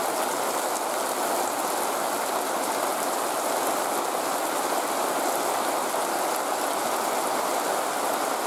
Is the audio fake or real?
real